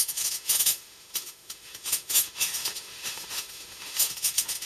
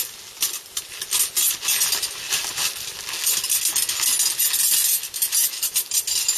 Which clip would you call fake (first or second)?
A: first